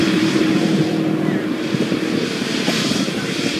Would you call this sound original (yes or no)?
no